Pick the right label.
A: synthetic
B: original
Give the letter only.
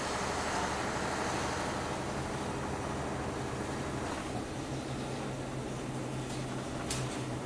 B